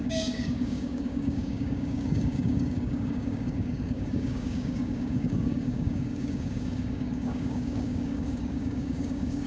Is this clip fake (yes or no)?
yes